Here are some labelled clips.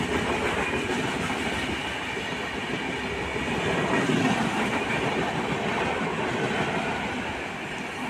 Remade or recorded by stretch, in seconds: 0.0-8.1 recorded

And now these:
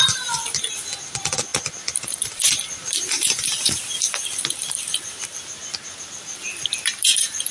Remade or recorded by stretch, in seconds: 0.0-0.4 remade; 0.4-1.1 recorded; 1.1-1.5 remade; 1.5-6.0 recorded; 6.0-7.5 remade

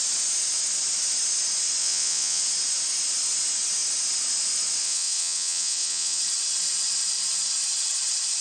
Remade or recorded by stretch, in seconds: 0.0-1.8 recorded; 1.8-2.4 remade; 2.4-4.8 recorded; 4.8-6.2 remade; 6.2-8.4 recorded

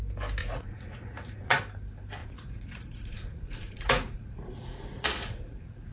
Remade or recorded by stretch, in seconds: 0.0-0.4 recorded; 0.4-1.6 remade; 1.6-2.2 recorded; 2.2-5.9 remade

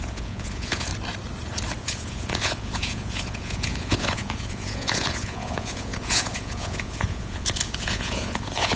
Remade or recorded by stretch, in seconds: 0.0-0.9 remade; 0.9-1.8 recorded; 1.8-8.8 remade